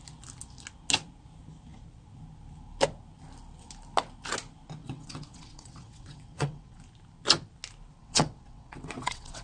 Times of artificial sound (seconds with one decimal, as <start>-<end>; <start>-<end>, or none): 4.8-6.8; 8.0-9.4